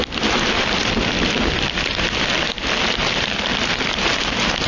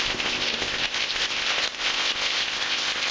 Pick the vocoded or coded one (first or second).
second